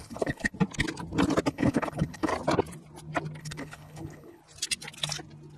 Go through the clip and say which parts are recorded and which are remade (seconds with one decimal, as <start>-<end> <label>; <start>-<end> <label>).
0.0-0.5 remade; 0.5-1.5 recorded; 1.5-2.3 remade; 2.3-3.4 recorded; 3.4-4.4 remade; 4.4-5.6 recorded